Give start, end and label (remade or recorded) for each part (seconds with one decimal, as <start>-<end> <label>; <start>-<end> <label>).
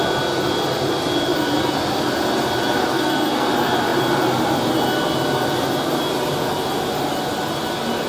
0.0-2.8 recorded; 2.8-3.5 remade; 3.5-8.1 recorded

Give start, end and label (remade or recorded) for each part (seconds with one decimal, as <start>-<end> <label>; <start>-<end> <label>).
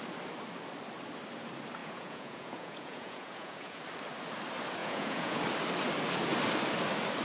0.0-1.8 recorded; 1.8-3.8 remade; 3.8-4.8 recorded; 4.8-5.4 remade; 5.4-7.2 recorded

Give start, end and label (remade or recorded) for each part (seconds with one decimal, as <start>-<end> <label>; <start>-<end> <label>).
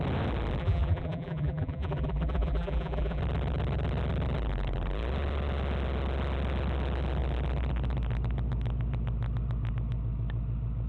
0.0-0.6 recorded; 0.6-3.2 remade; 3.2-10.9 recorded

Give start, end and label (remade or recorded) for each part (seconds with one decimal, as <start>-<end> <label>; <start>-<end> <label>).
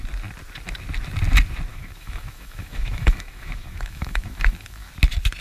0.0-1.7 recorded; 1.7-4.9 remade; 4.9-5.4 recorded